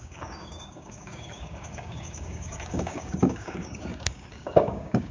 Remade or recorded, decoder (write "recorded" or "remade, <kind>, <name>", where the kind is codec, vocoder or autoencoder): remade, codec, DAC